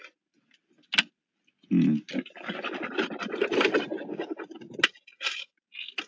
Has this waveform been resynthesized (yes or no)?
no